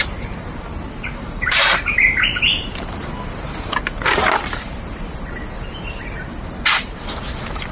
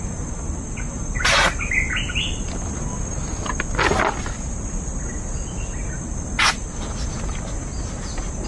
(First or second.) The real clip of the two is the second